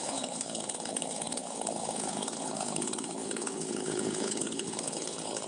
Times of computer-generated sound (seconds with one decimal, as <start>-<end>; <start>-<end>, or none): 0.0-5.5